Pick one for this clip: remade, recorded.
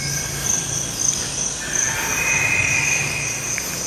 recorded